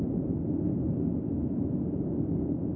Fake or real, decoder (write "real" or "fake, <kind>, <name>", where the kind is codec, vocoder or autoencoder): real